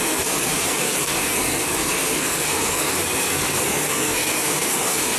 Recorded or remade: remade